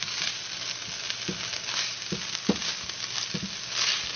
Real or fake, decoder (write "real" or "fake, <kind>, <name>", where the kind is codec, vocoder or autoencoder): real